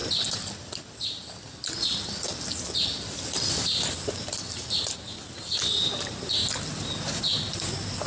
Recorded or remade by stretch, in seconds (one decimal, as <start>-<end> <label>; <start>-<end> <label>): 0.0-3.5 remade; 3.5-8.1 recorded